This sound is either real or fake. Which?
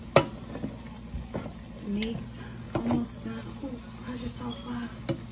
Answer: real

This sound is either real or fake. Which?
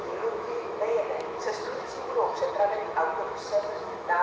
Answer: fake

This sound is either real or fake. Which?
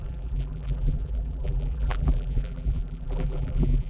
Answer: fake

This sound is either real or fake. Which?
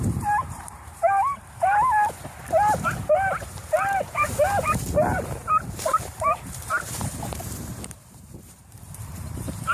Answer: fake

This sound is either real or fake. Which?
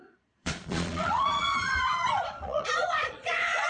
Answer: fake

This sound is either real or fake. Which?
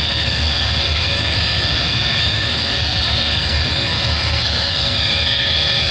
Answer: fake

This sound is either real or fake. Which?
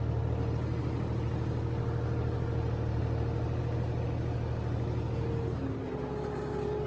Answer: real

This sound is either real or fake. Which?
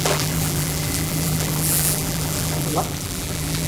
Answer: fake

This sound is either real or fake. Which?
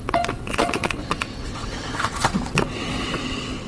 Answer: fake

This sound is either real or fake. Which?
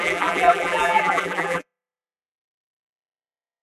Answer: fake